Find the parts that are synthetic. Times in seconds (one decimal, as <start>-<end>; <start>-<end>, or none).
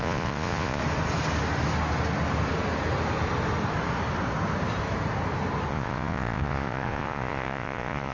0.0-0.8; 5.7-8.1